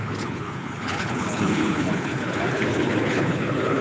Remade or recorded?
remade